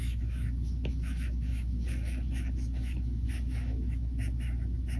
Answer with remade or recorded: remade